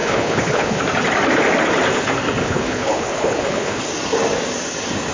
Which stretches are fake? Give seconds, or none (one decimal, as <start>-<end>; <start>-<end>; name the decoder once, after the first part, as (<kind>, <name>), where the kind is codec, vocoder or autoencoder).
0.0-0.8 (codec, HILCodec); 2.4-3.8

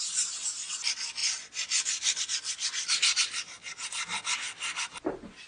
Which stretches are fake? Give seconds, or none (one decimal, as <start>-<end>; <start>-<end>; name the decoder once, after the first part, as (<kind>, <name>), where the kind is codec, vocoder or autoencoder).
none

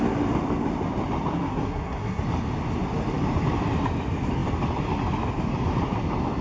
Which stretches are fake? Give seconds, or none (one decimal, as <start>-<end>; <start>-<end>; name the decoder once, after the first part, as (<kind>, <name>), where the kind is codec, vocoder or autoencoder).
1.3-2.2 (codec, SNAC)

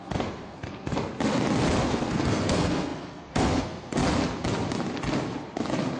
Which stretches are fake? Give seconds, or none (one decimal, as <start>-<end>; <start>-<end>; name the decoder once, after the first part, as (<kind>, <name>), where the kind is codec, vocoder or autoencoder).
0.0-0.9 (codec, SNAC); 1.8-4.0

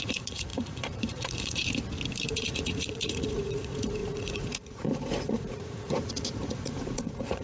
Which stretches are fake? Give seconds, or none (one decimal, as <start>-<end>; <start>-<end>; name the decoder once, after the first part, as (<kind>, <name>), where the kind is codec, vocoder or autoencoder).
0.0-1.6 (vocoder, Vocos); 2.3-7.4